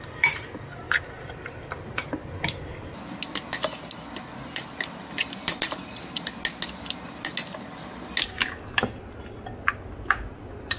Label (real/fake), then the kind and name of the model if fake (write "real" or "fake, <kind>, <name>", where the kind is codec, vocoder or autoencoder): real